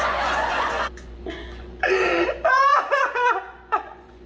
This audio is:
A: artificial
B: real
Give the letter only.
A